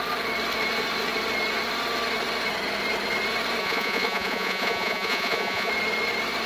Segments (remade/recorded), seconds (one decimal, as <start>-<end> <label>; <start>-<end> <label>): 0.0-3.6 recorded; 3.6-5.7 remade; 5.7-6.5 recorded